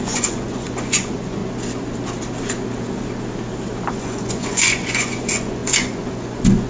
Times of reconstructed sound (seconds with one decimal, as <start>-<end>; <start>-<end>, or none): 0.0-1.4; 3.9-6.7